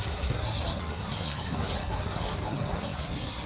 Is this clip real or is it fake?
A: fake